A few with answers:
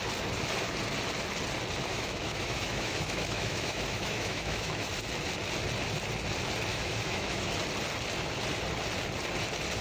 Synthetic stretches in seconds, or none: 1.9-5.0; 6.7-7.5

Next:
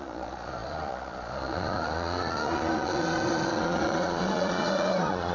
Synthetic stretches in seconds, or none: 0.0-5.3

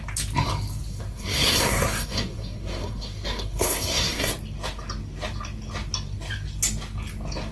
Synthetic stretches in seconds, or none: 0.9-4.3

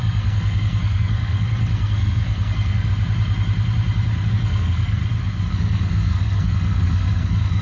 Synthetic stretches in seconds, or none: 0.0-2.9; 4.3-5.0; 5.5-7.6

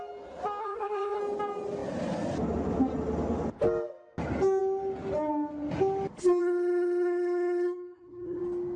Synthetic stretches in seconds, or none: 0.6-1.2; 6.4-8.4

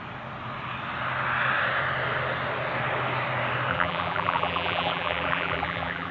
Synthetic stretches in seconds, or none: 3.7-6.1

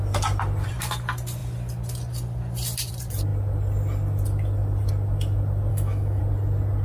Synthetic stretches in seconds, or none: 5.7-6.2

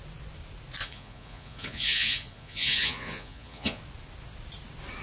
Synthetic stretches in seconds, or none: 0.8-3.8